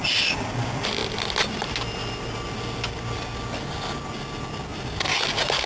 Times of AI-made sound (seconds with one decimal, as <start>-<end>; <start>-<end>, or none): none